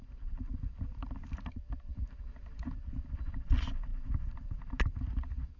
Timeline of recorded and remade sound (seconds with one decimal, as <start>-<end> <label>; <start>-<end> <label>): 0.0-5.6 recorded